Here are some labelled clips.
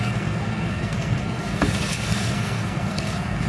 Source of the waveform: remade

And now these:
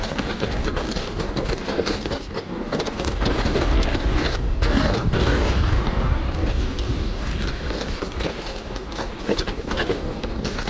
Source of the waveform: remade